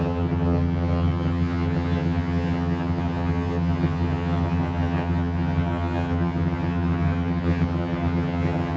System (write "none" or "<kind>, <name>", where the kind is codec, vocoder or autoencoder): vocoder, HiFi-GAN